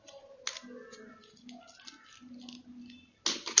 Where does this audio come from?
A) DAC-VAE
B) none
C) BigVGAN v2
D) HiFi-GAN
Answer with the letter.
B